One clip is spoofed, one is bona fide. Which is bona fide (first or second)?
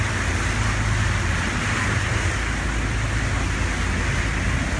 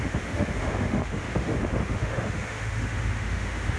first